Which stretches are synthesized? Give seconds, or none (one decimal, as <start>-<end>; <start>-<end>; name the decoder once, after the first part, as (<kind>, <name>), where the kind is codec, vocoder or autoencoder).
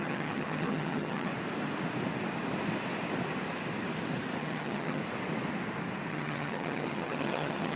0.0-1.3 (vocoder, HiFi-GAN); 4.4-5.0; 6.1-7.8